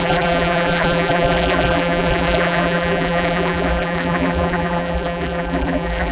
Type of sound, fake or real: fake